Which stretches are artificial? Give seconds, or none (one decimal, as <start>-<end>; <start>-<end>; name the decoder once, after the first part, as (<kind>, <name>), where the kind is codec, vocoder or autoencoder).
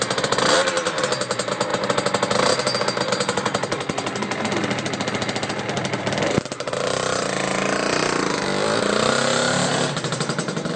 none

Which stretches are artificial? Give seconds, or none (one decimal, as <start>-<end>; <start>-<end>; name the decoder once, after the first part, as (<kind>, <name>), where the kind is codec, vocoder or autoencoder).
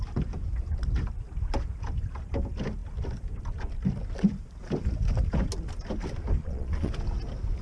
6.4-6.9 (vocoder, Vocos)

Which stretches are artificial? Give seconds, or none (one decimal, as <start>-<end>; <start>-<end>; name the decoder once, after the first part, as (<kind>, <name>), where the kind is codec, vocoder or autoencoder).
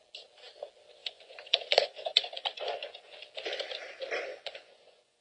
1.0-3.2 (vocoder, Vocos); 4.3-5.2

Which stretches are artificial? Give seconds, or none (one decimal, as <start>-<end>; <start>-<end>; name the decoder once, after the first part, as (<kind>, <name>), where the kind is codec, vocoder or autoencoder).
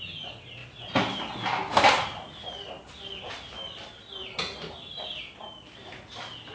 none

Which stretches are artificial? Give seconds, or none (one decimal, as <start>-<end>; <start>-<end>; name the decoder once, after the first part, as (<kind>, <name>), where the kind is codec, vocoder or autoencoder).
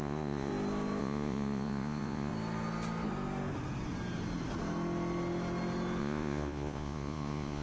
0.0-0.5 (vocoder, Vocos); 1.0-2.3; 6.0-7.6